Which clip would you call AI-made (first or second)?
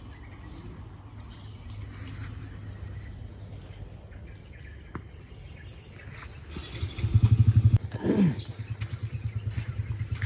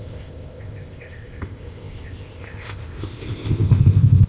second